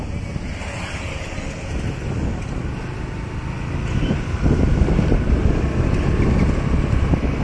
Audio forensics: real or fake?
real